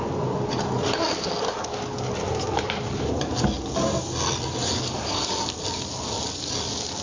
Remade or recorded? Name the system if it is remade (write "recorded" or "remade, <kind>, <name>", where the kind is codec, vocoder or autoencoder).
recorded